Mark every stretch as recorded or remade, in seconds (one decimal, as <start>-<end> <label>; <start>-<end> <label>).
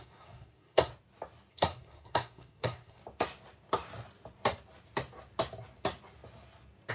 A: 0.0-0.9 remade; 0.9-1.5 recorded; 1.5-3.0 remade; 3.0-6.9 recorded